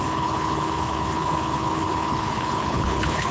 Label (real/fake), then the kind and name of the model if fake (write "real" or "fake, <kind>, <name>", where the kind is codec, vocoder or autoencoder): fake, codec, HILCodec